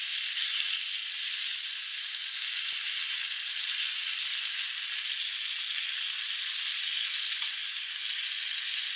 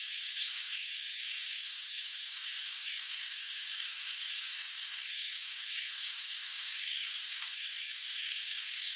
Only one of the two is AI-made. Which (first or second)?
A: second